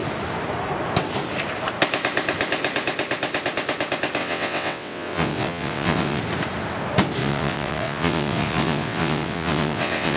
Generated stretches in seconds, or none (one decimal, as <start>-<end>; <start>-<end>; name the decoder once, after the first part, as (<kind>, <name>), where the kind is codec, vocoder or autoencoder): 4.2-6.2 (vocoder, WaveNeXt); 7.2-10.2